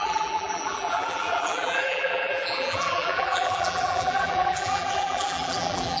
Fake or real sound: fake